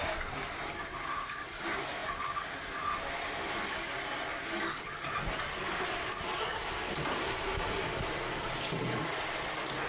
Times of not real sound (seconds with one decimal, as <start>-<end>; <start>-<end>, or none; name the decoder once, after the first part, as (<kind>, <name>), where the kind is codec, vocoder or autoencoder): none